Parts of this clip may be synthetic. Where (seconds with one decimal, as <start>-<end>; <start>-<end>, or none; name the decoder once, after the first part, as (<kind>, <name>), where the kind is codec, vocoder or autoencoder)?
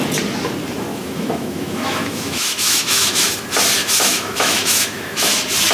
0.9-3.3 (autoencoder, DAC-VAE); 3.8-5.3